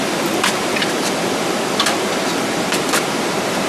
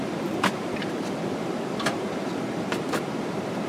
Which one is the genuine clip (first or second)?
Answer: first